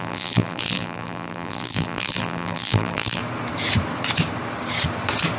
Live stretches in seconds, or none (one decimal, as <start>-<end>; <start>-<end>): 3.2-5.4